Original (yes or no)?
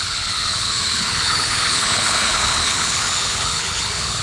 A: no